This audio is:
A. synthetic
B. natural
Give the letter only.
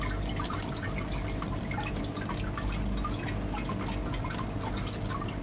B